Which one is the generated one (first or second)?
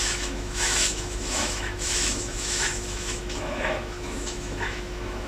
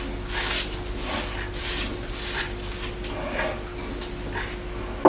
first